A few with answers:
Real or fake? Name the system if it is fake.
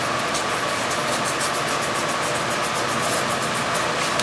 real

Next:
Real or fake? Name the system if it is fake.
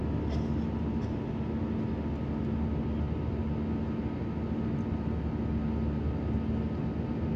real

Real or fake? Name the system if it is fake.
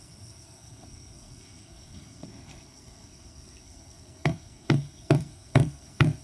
fake, codec, SNAC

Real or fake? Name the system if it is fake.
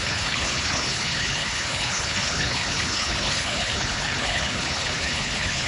fake, codec, HILCodec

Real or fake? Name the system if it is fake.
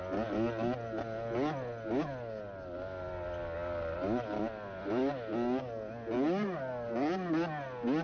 real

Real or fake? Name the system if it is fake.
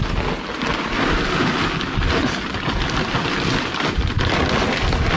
real